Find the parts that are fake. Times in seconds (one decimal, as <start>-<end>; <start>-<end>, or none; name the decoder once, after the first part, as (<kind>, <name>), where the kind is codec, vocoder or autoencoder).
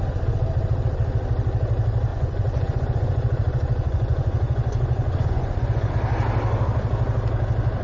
2.1-5.9 (vocoder, Vocos)